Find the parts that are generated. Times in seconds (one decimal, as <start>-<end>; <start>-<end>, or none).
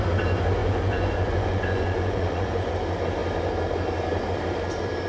0.6-2.7